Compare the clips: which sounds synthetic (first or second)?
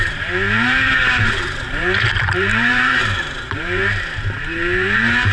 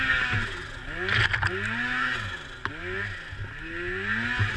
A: first